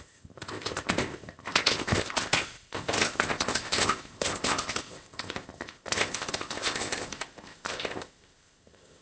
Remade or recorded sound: remade